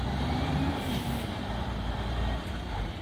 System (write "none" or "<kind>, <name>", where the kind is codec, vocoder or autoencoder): vocoder, BigVGAN v2